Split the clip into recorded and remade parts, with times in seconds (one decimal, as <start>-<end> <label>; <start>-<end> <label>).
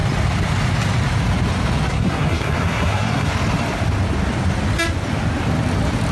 0.0-1.9 recorded; 1.9-3.3 remade; 3.3-6.1 recorded